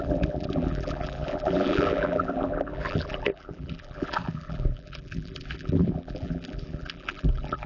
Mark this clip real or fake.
fake